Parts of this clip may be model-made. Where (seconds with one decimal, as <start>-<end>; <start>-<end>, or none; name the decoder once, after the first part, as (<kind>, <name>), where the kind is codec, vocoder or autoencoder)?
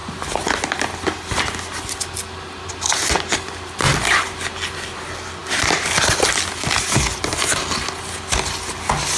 none